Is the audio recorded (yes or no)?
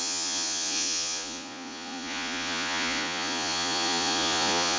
no